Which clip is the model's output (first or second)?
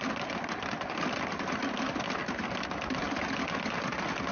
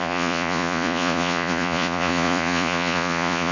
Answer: second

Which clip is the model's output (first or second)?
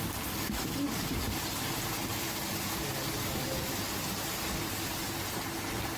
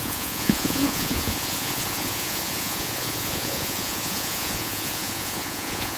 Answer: second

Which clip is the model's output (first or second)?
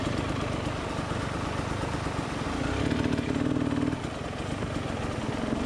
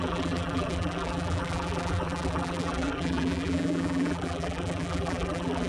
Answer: second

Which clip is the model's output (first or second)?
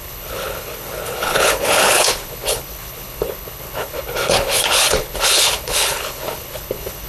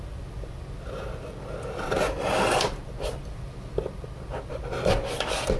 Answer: first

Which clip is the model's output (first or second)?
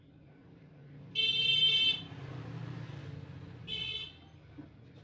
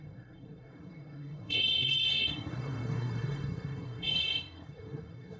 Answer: second